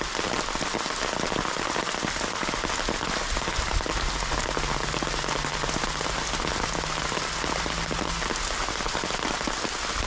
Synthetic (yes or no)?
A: no